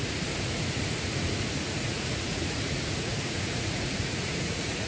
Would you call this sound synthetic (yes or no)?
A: yes